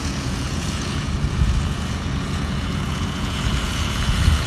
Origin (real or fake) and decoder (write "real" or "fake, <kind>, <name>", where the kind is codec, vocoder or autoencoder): fake, vocoder, Vocos